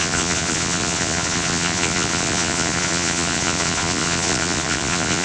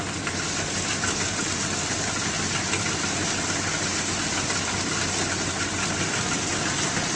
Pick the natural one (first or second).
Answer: second